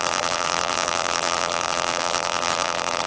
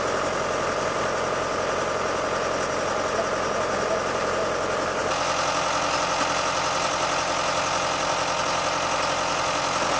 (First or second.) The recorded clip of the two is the second